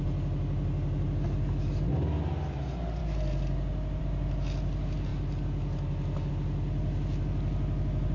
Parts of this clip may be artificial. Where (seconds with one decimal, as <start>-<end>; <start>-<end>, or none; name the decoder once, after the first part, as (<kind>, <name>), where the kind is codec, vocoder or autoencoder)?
none